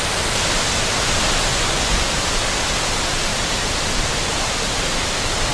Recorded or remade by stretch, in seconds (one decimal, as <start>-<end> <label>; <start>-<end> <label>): 0.0-1.5 recorded; 1.5-2.1 remade; 2.1-5.5 recorded